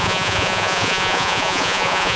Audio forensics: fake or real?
fake